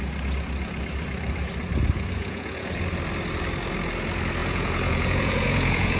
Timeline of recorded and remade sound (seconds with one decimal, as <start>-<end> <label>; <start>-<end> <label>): 0.0-2.2 recorded; 2.2-2.8 remade; 2.8-4.4 recorded; 4.4-6.0 remade